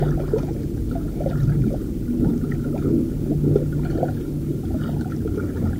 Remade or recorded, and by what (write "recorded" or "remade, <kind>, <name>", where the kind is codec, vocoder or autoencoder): recorded